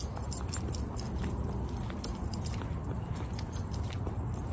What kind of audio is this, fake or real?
real